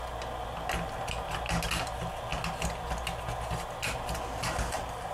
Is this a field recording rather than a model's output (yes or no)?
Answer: yes